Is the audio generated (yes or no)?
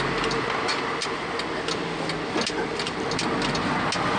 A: no